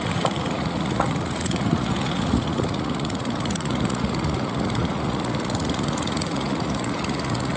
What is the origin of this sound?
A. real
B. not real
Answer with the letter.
B